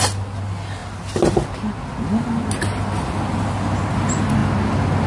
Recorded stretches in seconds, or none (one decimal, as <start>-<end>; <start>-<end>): 0.0-5.1

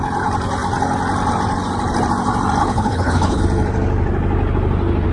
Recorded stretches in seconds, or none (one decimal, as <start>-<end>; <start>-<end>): 0.0-2.6; 3.4-5.1

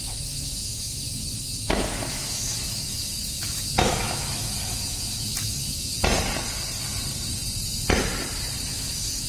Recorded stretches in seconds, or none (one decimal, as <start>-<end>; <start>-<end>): 5.9-8.6

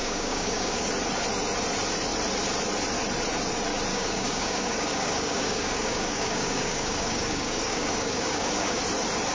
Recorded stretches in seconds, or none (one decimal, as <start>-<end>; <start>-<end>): 0.9-3.9; 8.8-9.3

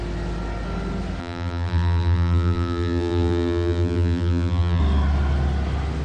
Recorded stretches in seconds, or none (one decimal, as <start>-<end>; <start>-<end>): 0.0-1.2; 4.8-6.0